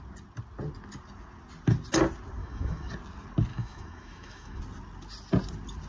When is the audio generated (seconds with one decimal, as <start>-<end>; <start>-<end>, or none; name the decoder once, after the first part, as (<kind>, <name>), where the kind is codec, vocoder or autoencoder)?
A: 2.4-2.9 (autoencoder, DAC-VAE); 3.5-4.6